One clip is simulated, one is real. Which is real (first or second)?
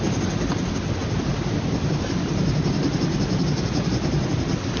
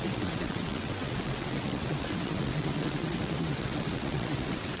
first